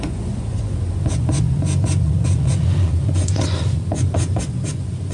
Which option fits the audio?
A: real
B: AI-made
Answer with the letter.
B